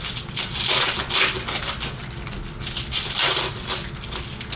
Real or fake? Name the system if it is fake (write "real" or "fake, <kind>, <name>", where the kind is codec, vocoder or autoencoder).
real